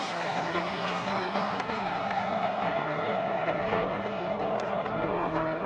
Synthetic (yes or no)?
yes